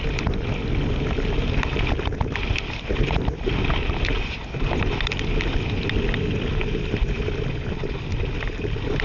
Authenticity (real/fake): real